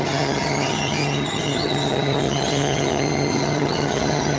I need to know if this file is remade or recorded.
remade